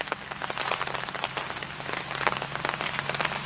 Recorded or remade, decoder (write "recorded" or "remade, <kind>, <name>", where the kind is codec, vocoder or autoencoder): recorded